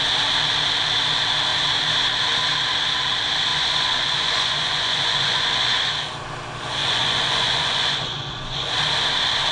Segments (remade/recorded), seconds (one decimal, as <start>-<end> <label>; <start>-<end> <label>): 0.0-3.5 recorded; 3.5-5.9 remade; 5.9-6.8 recorded; 6.8-8.8 remade; 8.8-9.5 recorded